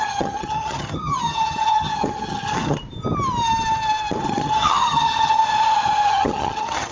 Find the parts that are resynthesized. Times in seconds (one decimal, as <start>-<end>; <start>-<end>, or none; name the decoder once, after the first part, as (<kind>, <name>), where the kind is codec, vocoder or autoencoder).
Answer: 0.0-2.8 (vocoder, HiFi-GAN); 4.2-5.4; 6.1-6.9